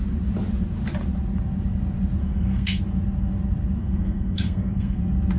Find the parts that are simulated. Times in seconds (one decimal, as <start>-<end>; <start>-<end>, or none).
2.2-2.8; 3.8-5.0